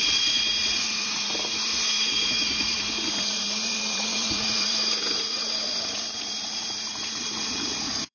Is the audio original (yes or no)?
no